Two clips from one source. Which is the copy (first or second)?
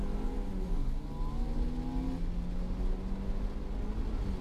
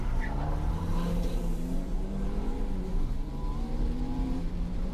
second